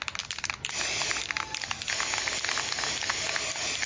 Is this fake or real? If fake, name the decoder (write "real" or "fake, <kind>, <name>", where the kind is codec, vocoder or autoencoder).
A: real